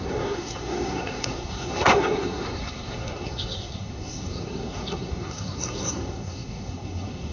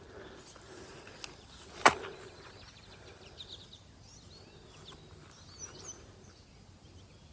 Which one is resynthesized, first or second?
first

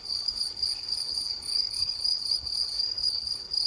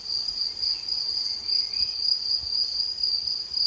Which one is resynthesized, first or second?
first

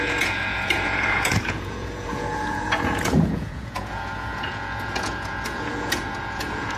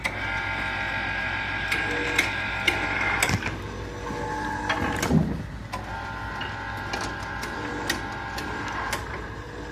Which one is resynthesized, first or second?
first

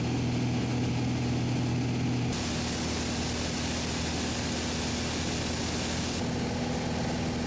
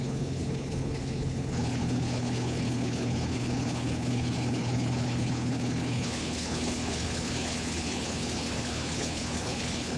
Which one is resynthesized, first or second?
second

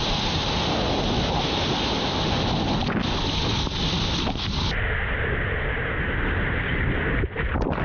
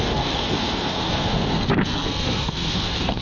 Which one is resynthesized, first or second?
second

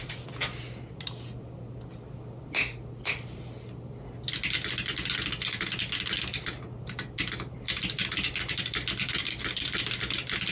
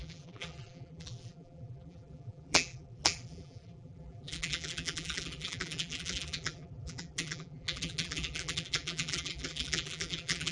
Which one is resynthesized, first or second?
second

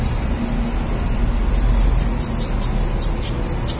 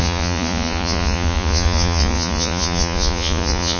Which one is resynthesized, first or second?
second